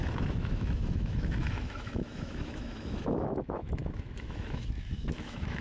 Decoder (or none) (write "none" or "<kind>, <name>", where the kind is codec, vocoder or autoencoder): autoencoder, DAC-VAE